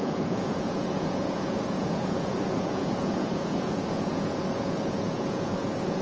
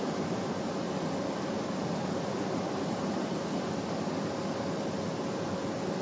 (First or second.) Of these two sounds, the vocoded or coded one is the first